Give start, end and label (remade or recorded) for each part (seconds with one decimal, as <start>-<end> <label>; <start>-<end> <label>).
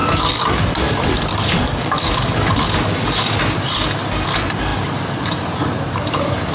0.0-0.6 remade; 0.6-1.3 recorded; 1.3-2.5 remade; 2.5-6.5 recorded